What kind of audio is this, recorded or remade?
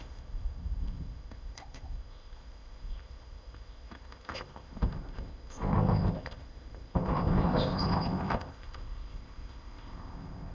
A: remade